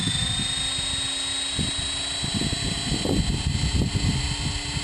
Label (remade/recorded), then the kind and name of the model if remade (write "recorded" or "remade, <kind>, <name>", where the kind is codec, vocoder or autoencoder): recorded